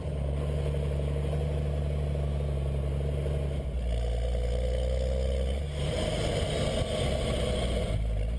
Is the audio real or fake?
real